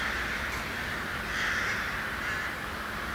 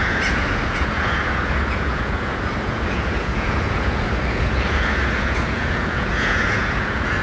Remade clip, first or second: second